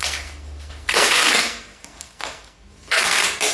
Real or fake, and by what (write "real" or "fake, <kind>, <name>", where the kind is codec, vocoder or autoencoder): fake, codec, SNAC